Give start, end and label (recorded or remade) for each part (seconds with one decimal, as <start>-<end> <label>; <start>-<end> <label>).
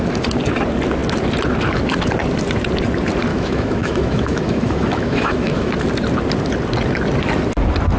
0.0-3.3 recorded; 3.3-5.7 remade; 5.7-8.0 recorded